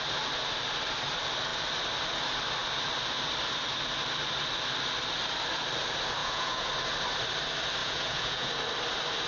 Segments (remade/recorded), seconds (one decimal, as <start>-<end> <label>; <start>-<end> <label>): 0.0-6.2 recorded; 6.2-6.7 remade; 6.7-7.8 recorded; 7.8-8.5 remade; 8.5-9.3 recorded